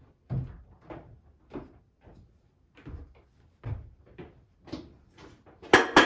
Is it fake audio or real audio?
real